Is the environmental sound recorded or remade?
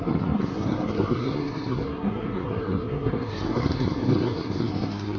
remade